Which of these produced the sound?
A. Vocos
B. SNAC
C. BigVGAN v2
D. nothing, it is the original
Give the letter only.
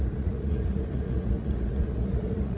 A